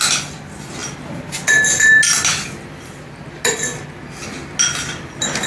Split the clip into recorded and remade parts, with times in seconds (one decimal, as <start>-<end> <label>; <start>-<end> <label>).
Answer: 0.0-5.5 recorded